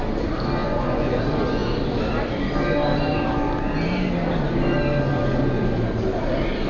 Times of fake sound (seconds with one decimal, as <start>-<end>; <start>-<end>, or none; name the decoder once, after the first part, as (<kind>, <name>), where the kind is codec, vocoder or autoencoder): 0.6-1.2 (vocoder, Vocos)